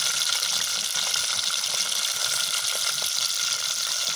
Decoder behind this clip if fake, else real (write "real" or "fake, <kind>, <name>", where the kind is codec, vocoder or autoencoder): real